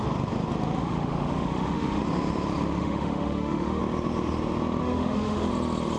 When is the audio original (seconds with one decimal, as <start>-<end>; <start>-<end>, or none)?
0.0-0.8; 2.0-2.8; 3.8-4.8; 5.5-6.0